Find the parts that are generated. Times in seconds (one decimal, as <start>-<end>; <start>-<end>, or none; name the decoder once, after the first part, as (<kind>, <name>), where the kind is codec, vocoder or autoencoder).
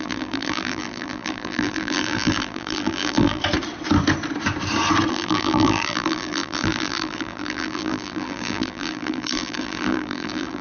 0.0-3.4 (vocoder, BigVGAN v2); 5.1-10.6